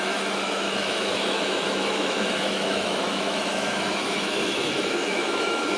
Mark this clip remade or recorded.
remade